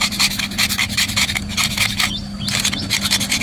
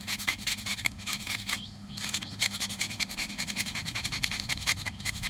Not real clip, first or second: second